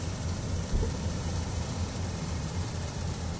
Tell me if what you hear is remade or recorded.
remade